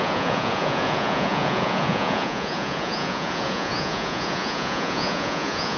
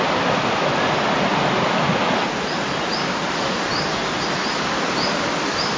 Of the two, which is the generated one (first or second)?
first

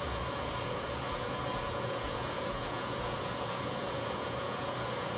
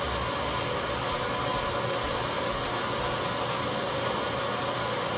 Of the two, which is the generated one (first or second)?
first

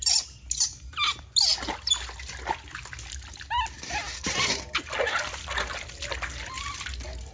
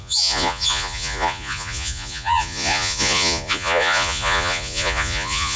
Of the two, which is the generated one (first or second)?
second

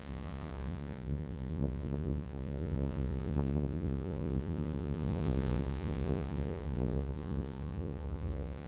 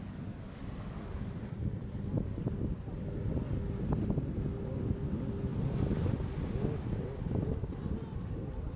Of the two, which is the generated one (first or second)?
first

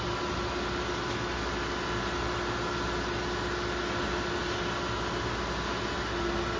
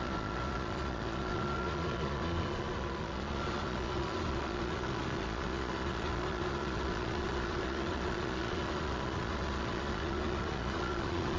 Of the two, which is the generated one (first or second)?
second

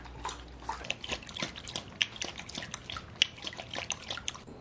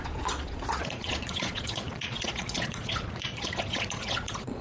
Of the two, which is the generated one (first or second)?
second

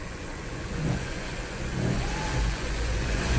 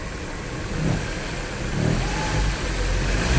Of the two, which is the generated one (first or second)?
first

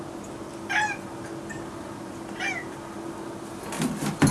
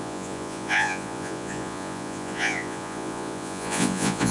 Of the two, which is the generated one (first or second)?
second